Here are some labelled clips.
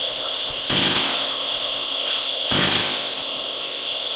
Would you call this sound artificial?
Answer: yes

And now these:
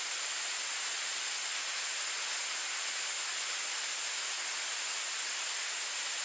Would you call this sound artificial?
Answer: no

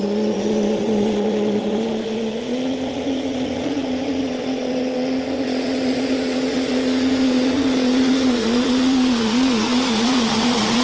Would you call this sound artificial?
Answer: yes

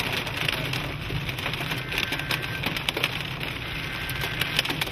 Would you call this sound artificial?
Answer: no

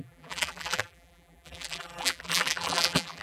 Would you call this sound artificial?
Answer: yes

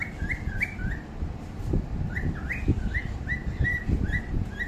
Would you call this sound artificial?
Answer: no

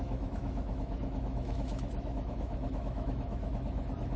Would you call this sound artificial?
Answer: yes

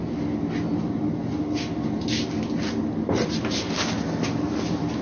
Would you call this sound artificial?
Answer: no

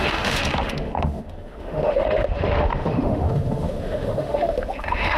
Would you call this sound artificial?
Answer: yes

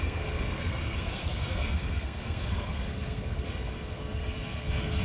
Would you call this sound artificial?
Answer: yes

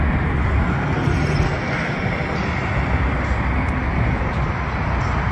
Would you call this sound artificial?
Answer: no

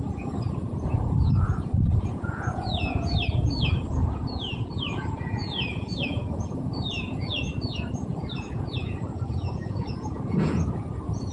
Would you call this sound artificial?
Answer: yes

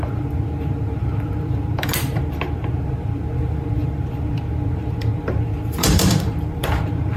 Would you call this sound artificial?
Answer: yes